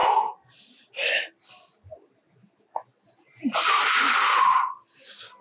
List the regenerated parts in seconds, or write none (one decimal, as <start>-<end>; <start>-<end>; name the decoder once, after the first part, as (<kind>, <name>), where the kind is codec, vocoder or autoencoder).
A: 1.0-2.2 (vocoder, BigVGAN v2)